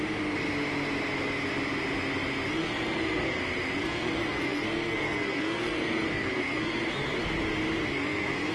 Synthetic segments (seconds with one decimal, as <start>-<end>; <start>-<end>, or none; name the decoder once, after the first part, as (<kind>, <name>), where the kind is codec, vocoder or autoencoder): 2.6-3.4 (codec, SNAC); 3.8-6.8; 7.9-8.5